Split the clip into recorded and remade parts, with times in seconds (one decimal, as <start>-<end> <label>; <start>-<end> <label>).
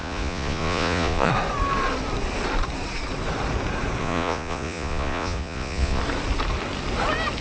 0.0-1.3 remade; 1.3-4.0 recorded; 4.0-6.0 remade; 6.0-7.4 recorded